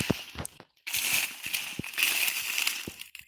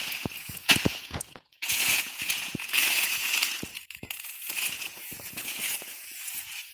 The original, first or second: first